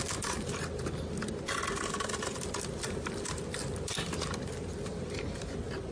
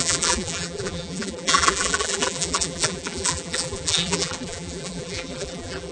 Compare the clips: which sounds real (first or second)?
first